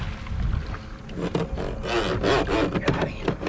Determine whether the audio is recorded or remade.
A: recorded